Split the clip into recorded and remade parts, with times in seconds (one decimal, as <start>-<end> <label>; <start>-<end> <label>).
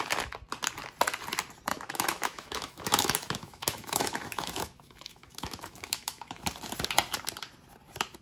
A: 0.0-1.7 recorded; 1.7-6.4 remade; 6.4-8.2 recorded